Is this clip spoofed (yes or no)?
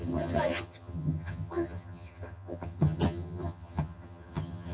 yes